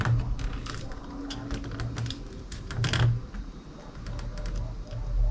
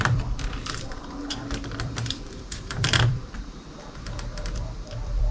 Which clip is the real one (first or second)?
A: first